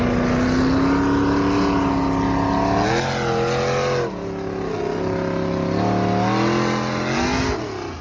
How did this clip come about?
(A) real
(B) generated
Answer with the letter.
A